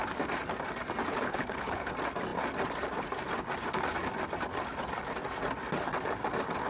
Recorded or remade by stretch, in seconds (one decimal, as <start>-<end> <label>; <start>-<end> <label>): 0.0-1.1 recorded; 1.1-1.9 remade; 1.9-6.7 recorded